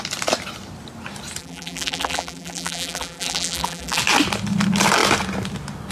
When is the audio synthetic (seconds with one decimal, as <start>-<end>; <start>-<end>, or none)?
1.4-4.0

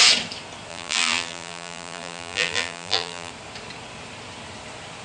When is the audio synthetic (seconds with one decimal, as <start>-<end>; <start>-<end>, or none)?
0.7-3.3

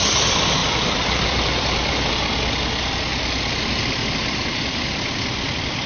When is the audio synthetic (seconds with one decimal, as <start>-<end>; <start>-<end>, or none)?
0.6-2.1; 4.0-5.9

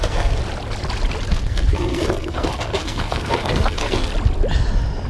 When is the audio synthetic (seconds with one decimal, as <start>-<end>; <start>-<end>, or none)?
0.0-0.4; 1.3-4.1

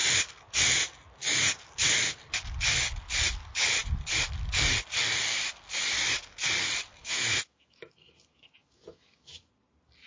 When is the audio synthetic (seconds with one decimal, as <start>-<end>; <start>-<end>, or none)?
7.0-9.5

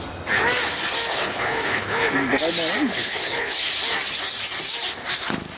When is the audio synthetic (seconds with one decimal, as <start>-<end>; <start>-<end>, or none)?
1.1-2.1; 2.9-3.7

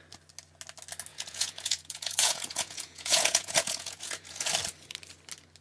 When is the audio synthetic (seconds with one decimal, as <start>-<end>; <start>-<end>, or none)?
1.1-4.5